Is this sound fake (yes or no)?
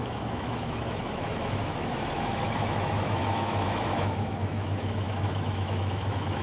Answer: yes